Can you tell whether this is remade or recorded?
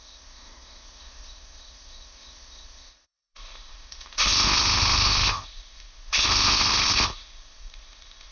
remade